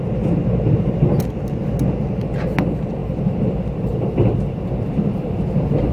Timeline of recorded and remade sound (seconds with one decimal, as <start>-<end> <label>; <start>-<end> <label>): 0.0-5.9 recorded